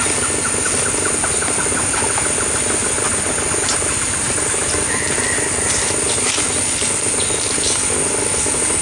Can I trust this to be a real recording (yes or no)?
yes